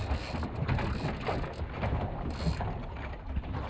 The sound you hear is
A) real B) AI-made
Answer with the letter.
A